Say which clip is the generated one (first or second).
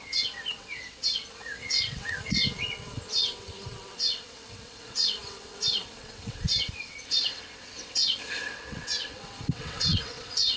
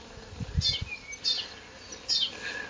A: first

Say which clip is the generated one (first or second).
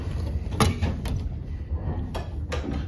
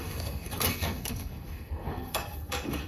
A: second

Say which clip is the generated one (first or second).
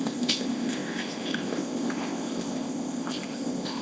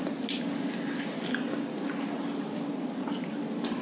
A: first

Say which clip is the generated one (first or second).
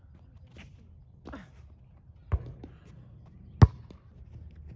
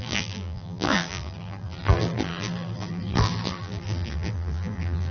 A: second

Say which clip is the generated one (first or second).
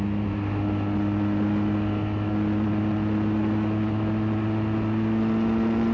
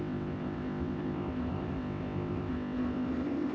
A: second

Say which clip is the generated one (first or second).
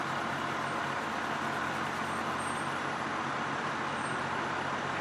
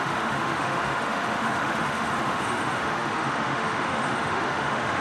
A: second